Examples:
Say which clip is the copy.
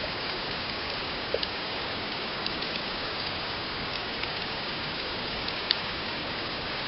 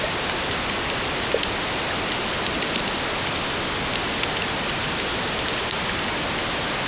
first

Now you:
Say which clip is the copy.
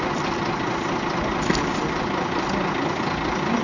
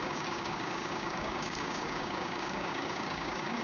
second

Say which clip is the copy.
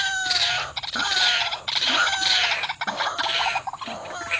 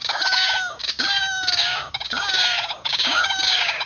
second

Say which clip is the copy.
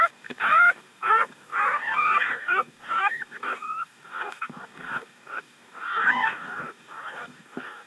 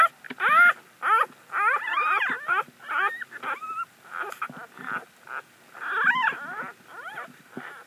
first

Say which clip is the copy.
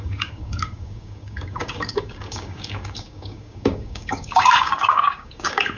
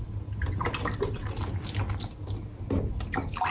first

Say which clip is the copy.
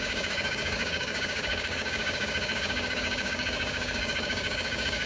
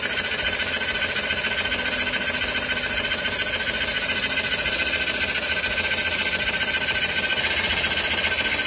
first